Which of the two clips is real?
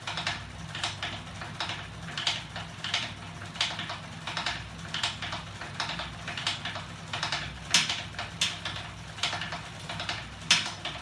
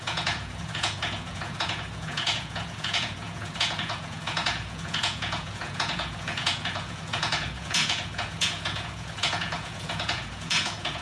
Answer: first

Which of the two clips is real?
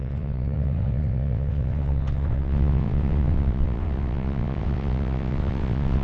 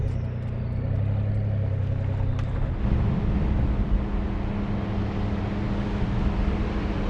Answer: second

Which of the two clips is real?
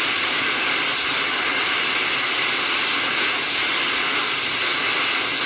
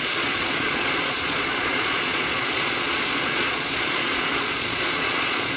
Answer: first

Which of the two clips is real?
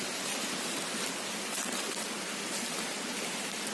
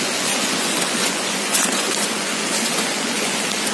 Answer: first